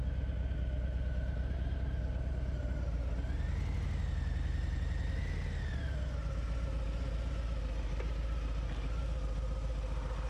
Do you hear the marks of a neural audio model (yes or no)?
no